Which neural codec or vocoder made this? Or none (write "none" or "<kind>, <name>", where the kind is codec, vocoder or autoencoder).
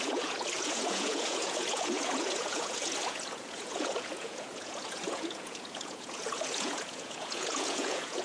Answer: vocoder, Vocos